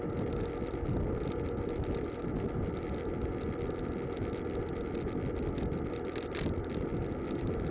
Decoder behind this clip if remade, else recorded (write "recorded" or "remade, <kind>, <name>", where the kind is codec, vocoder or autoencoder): recorded